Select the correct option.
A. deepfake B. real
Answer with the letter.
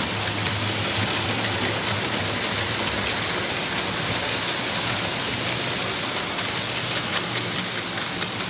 B